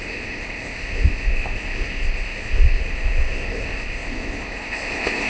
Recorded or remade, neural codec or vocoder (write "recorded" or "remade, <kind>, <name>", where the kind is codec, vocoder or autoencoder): remade, codec, ZipCodec